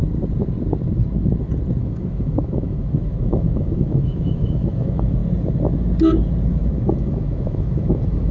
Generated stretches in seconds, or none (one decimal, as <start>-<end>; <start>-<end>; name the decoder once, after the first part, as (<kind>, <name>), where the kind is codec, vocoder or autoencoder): 1.8-5.2 (autoencoder, DAC-VAE); 6.5-8.3